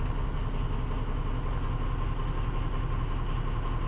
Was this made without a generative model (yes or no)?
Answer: yes